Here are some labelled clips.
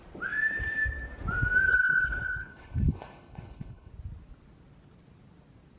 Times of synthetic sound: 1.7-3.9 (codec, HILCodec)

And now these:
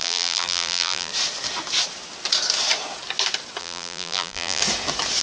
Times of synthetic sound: 0.0-1.1 (vocoder, BigVGAN v2); 3.6-4.6

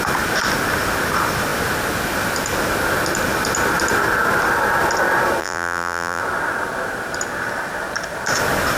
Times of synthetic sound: 5.4-6.2 (vocoder, BigVGAN v2)

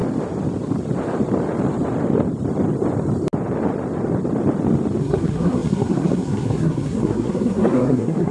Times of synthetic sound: 5.0-8.3 (codec, SNAC)

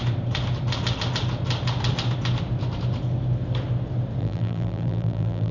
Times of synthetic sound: 4.2-5.5 (vocoder, BigVGAN v2)

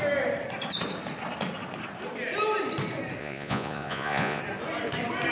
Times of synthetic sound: 3.2-4.4 (vocoder, Vocos)

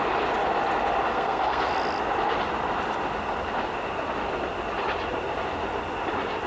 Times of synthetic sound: 1.1-1.7 (codec, SNAC)